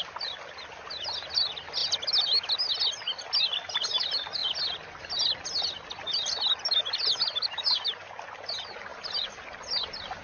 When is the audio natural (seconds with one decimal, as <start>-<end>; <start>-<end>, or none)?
0.0-10.2